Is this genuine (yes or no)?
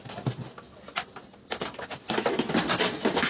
yes